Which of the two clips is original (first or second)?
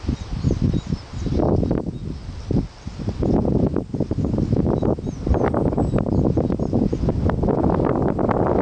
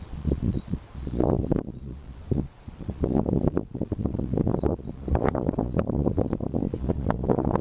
first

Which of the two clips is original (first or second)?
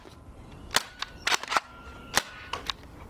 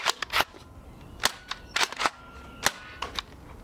second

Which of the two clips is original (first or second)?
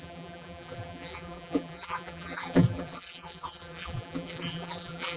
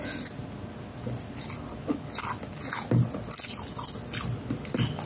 second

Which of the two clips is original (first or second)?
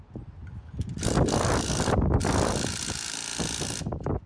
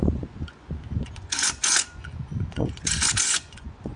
first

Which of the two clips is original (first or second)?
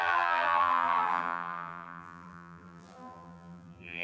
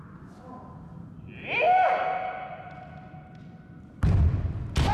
second